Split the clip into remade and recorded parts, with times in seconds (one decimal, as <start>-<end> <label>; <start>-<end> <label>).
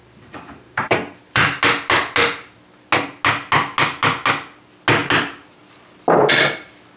0.0-1.6 remade; 1.6-7.0 recorded